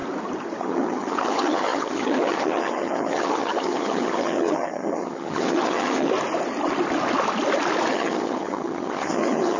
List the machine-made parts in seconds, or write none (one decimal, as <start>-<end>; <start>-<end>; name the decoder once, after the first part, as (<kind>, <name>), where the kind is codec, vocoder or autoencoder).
0.6-6.1 (vocoder, HiFi-GAN); 7.9-9.6